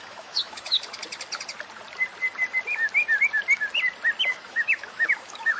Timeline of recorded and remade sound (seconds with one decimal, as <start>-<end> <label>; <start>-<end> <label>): 0.0-1.0 remade; 1.0-4.2 recorded; 4.2-5.6 remade